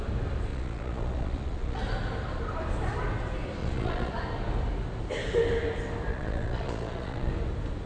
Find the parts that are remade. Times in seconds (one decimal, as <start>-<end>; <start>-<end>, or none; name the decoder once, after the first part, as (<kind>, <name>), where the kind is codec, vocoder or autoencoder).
0.5-1.8 (vocoder, Vocos); 3.6-4.1; 6.1-7.3